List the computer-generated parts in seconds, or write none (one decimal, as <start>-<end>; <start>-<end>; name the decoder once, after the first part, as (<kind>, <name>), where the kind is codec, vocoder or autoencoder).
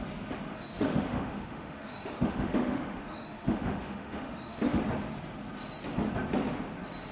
0.5-4.8 (autoencoder, DAC-VAE)